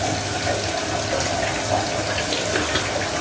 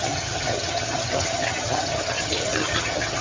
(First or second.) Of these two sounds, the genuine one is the first